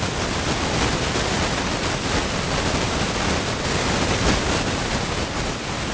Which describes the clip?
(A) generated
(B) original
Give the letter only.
B